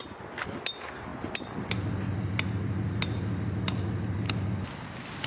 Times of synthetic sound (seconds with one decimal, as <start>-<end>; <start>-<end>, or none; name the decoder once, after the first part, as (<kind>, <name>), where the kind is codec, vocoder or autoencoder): none